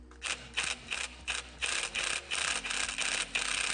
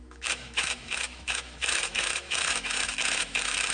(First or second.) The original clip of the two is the first